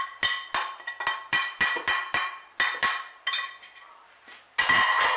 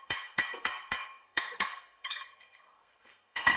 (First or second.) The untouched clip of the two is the first